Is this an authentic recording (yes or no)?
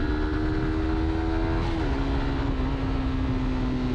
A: yes